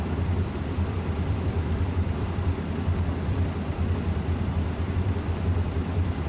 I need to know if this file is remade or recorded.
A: remade